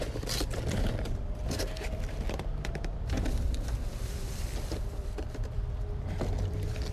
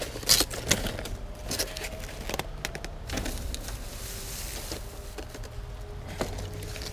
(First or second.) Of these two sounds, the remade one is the first